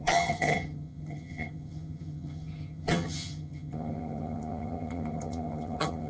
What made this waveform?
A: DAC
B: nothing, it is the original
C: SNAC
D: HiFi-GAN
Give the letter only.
D